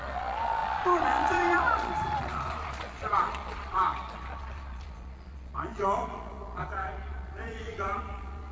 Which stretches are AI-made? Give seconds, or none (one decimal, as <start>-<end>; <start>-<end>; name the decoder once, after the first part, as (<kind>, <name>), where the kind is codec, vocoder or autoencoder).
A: 0.0-8.5 (vocoder, Vocos)